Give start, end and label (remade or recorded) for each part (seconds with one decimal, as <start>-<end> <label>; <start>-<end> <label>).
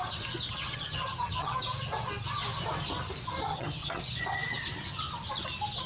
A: 0.0-0.6 recorded; 0.6-1.6 remade; 1.6-3.5 recorded; 3.5-4.0 remade; 4.0-5.9 recorded